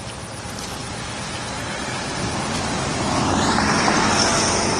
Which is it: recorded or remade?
recorded